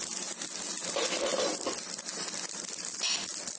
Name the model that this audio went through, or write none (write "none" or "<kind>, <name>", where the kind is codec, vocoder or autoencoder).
none